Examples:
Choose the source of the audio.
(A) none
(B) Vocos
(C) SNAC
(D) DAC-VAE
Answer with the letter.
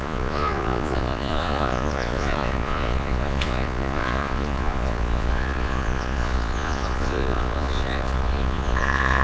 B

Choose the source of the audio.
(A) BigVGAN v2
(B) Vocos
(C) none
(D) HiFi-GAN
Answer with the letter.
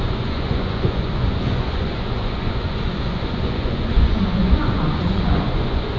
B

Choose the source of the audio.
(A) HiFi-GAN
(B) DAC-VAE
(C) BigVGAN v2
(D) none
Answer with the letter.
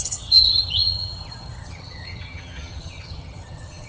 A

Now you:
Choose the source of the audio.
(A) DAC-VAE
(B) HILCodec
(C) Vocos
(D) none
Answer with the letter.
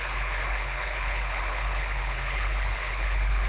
B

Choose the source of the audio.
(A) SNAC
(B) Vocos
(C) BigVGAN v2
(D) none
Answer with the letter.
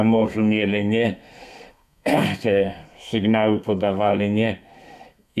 A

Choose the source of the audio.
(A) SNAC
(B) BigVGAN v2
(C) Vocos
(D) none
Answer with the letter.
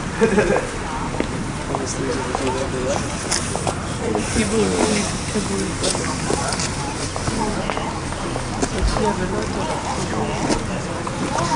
D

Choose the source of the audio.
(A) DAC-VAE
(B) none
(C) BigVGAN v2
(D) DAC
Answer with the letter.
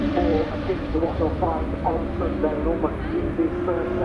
C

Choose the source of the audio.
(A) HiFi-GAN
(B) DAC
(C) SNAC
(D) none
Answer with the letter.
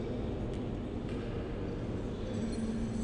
D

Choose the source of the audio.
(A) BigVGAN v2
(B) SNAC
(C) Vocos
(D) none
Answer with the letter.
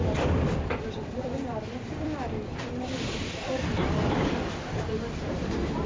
A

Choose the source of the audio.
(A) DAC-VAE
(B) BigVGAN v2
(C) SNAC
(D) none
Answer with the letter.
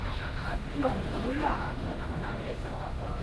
A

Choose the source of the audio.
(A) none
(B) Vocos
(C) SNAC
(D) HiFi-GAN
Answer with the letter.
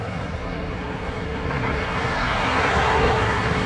C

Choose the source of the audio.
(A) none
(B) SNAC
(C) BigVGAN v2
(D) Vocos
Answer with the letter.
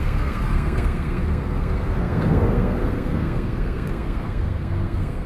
B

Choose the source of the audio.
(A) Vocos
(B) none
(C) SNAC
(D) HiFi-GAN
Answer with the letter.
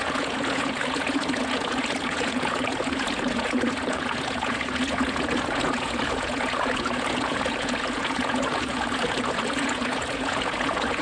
A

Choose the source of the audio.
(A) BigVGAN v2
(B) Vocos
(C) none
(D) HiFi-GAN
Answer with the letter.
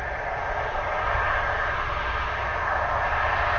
C